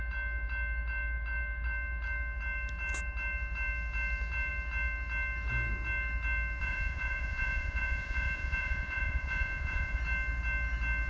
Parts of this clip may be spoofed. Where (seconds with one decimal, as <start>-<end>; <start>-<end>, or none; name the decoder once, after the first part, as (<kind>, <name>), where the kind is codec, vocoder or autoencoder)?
6.6-10.0 (vocoder, Vocos)